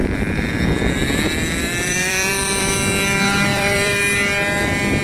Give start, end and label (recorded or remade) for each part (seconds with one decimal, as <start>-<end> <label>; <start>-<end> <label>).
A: 0.0-2.7 remade; 2.7-3.5 recorded; 3.5-4.0 remade; 4.0-5.0 recorded